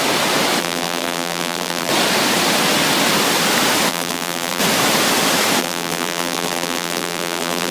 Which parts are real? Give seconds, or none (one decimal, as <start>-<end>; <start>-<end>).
0.0-0.6; 1.9-3.9; 4.6-5.6